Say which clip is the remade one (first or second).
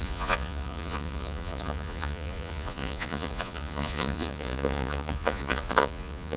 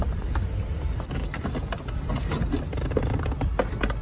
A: first